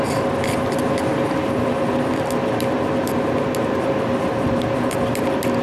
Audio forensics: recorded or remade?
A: recorded